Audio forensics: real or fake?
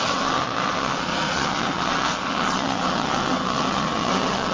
fake